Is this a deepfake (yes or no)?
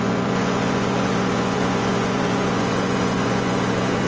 yes